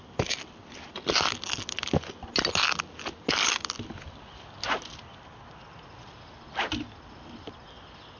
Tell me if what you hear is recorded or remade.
recorded